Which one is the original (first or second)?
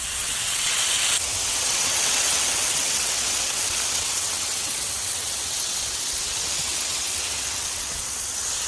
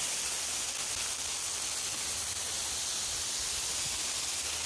second